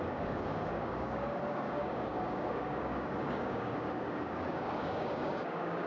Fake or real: fake